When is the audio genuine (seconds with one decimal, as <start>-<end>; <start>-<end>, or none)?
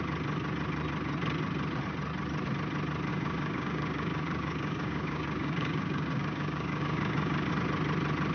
0.0-3.1; 7.5-8.3